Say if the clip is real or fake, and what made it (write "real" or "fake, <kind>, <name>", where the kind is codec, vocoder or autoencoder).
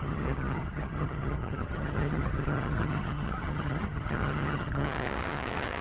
fake, vocoder, HiFi-GAN